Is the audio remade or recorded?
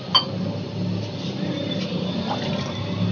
recorded